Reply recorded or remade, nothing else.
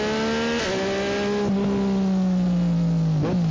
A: recorded